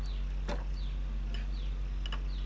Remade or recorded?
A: recorded